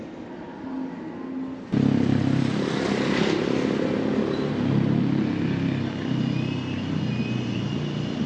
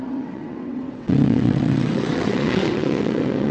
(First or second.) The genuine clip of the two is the first